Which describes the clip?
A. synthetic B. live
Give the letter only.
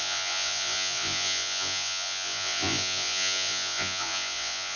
A